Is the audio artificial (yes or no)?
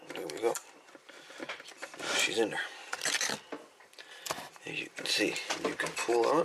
yes